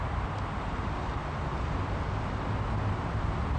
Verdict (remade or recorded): recorded